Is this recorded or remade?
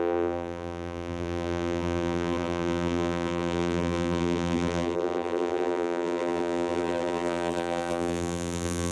remade